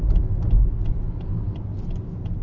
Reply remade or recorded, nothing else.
recorded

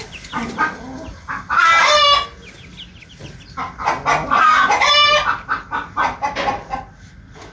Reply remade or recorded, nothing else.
recorded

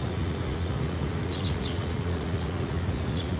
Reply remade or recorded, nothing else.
remade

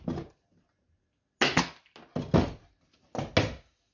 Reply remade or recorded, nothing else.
recorded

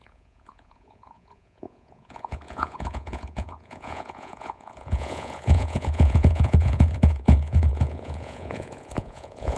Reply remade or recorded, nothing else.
remade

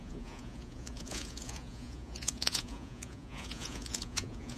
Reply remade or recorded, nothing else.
remade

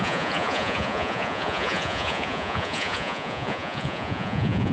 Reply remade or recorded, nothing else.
remade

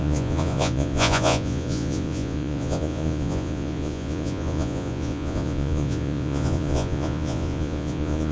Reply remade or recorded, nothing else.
remade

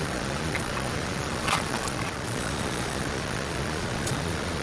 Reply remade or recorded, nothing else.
remade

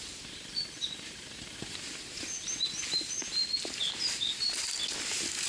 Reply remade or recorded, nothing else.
recorded